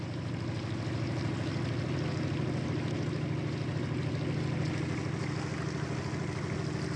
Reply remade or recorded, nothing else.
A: recorded